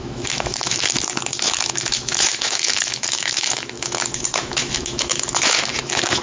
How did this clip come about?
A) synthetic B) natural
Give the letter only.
A